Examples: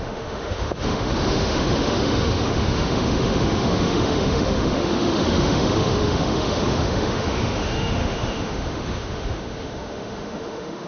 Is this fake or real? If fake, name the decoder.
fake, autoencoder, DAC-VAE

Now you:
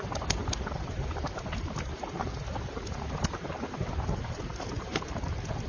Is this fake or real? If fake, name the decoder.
fake, vocoder, BigVGAN v2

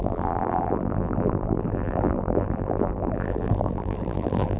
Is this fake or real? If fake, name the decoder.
fake, vocoder, BigVGAN v2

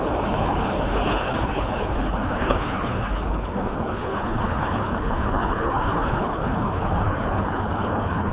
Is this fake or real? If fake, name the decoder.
fake, codec, HILCodec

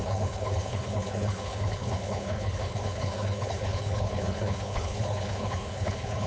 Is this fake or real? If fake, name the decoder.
fake, codec, HILCodec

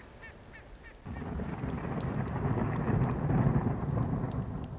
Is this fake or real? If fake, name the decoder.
real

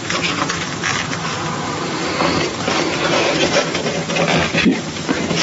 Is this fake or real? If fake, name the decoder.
real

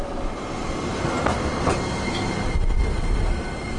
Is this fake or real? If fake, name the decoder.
real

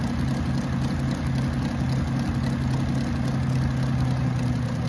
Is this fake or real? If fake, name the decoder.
real